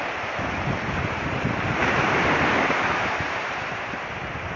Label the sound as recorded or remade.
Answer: remade